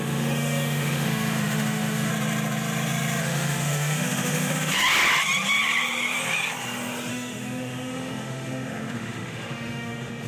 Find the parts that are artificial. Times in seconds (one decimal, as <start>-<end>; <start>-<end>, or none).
0.0-2.1; 3.2-4.7; 7.1-10.3